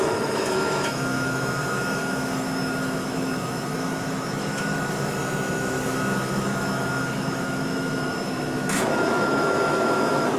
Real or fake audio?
fake